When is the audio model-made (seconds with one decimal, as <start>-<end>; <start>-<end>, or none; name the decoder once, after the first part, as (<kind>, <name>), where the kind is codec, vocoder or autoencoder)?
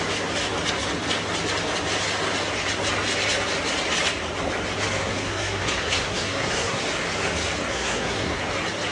5.0-6.8 (codec, SNAC); 7.7-8.4